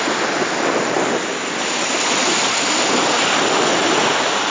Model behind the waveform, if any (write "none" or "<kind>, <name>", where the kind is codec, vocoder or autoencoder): none